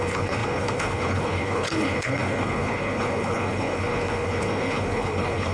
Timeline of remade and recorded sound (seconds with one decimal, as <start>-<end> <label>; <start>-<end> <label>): 0.0-5.5 remade